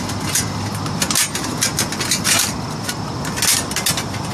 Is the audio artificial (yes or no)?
no